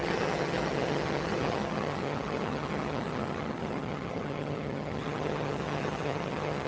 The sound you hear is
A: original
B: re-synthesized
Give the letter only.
B